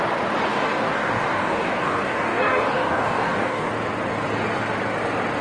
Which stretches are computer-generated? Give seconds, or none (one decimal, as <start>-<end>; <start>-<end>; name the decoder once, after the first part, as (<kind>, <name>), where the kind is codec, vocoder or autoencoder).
0.5-3.7 (codec, DAC)